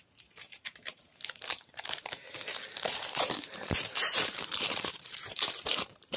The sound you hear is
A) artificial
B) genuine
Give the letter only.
A